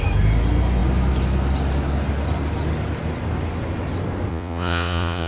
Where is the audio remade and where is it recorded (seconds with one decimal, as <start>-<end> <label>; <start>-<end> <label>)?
0.0-4.3 recorded; 4.3-5.3 remade